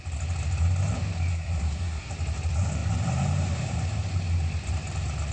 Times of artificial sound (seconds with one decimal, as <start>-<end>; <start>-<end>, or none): 1.3-2.1